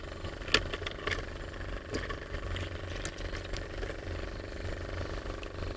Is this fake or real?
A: real